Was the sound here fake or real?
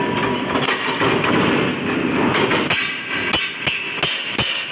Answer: real